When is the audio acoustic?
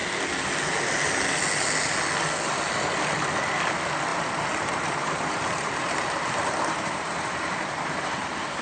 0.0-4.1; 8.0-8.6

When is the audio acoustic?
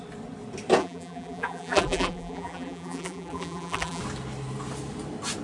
0.0-0.8; 4.0-5.4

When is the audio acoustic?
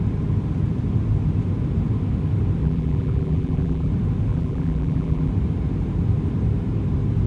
0.0-2.6; 3.9-4.3; 5.3-7.3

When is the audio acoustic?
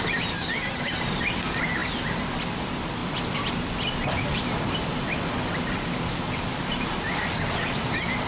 0.0-3.0; 7.4-8.3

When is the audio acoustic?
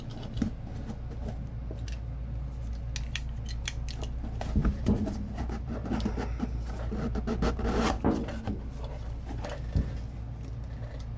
0.0-4.6; 5.9-11.2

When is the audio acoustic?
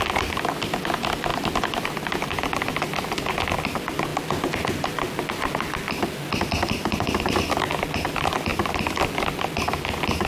0.0-1.3; 2.4-10.3